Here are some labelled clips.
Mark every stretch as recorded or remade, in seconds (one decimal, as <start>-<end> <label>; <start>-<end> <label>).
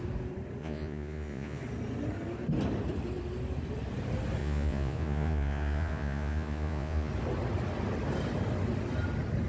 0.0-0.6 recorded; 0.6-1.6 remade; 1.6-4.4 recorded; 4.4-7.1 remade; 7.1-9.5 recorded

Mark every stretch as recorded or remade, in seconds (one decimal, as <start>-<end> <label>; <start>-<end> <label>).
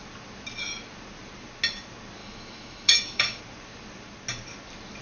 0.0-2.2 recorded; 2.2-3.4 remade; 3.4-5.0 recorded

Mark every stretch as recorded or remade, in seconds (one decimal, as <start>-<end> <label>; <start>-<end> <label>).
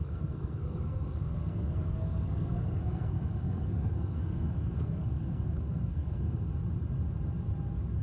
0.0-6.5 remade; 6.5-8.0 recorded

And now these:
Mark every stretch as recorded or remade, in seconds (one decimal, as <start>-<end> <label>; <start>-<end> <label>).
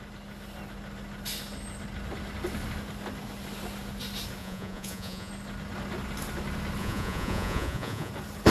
0.0-4.4 recorded; 4.4-5.3 remade; 5.3-6.8 recorded; 6.8-8.1 remade; 8.1-8.5 recorded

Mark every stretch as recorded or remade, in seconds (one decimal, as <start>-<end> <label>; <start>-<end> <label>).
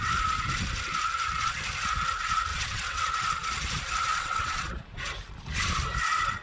0.0-2.5 recorded; 2.5-3.1 remade; 3.1-4.1 recorded; 4.1-4.7 remade; 4.7-6.4 recorded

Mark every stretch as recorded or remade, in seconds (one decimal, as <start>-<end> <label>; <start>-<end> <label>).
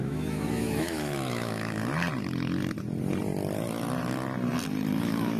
0.0-1.8 remade; 1.8-5.0 recorded; 5.0-5.4 remade